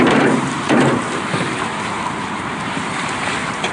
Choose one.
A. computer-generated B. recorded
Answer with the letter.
A